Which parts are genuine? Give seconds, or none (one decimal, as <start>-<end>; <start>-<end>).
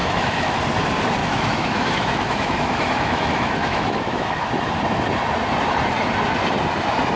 0.6-1.2; 4.5-7.2